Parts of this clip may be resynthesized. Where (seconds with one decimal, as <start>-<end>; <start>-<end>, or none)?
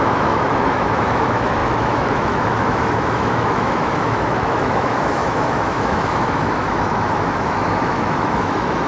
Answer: 0.0-8.9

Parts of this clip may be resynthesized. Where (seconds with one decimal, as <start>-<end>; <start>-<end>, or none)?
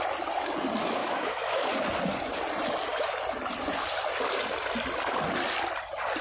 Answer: 1.0-1.7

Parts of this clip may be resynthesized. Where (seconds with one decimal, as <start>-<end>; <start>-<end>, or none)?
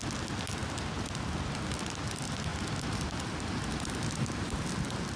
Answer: none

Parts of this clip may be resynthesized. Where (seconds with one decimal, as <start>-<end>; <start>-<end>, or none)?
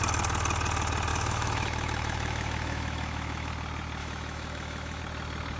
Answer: 1.1-3.5; 4.0-5.0